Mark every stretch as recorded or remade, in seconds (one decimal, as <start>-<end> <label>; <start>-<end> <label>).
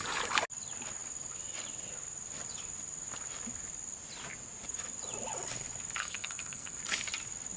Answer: 0.0-6.0 recorded; 6.0-6.8 remade; 6.8-7.6 recorded